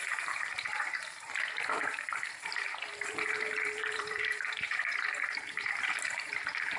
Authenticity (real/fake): fake